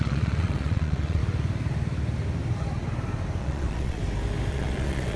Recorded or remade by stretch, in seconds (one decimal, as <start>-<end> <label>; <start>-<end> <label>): 0.0-1.2 remade; 1.2-3.4 recorded; 3.4-4.0 remade; 4.0-4.5 recorded; 4.5-5.2 remade